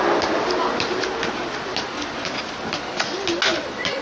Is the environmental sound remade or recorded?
recorded